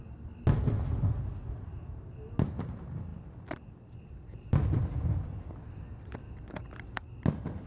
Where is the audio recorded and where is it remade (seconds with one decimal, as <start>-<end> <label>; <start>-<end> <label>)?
0.0-7.7 recorded